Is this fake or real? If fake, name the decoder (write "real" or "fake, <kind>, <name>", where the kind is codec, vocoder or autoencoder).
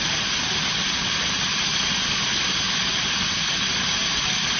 real